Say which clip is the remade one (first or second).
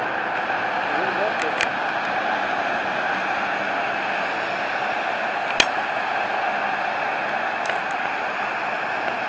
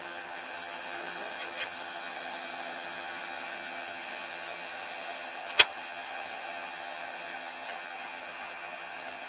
second